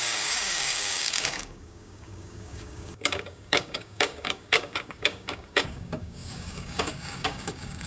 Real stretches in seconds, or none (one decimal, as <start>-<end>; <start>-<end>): none